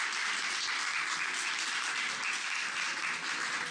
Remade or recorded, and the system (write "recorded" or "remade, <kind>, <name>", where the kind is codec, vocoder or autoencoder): recorded